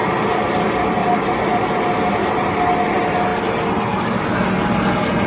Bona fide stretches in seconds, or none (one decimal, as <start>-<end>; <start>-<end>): 0.6-1.0; 2.1-5.3